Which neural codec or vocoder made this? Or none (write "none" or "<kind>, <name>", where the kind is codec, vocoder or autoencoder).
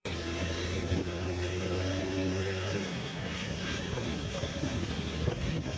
codec, SNAC